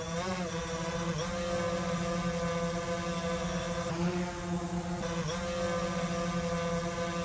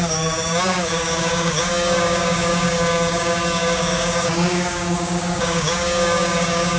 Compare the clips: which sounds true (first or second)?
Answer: first